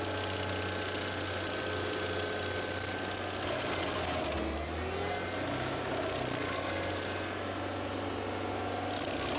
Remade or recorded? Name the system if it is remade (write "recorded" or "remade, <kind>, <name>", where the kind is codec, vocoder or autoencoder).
recorded